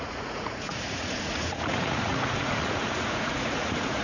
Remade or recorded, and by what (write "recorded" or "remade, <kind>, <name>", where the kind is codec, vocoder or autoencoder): remade, vocoder, Vocos